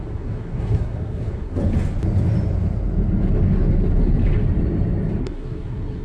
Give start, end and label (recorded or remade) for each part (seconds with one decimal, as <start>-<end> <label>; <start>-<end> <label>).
0.0-1.6 remade; 1.6-5.2 recorded; 5.2-6.0 remade